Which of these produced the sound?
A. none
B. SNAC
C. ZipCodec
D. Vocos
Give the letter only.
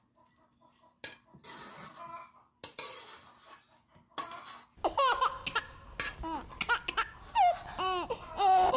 A